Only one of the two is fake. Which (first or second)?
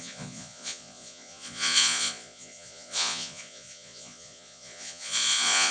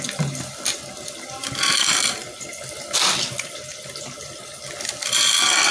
first